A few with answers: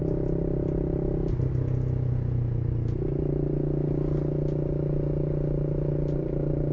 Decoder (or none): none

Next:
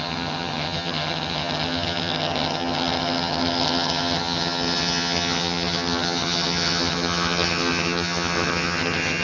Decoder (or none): vocoder, HiFi-GAN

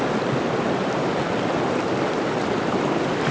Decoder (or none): none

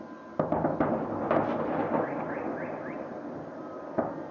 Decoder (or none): none